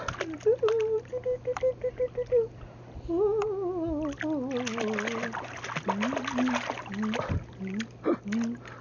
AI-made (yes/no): no